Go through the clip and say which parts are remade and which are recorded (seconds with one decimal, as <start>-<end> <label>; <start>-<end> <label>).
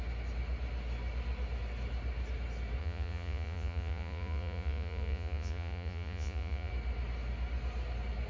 0.0-2.8 recorded; 2.8-6.7 remade; 6.7-8.3 recorded